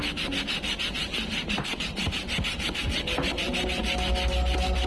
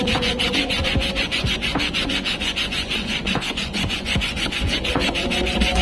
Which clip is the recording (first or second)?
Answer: first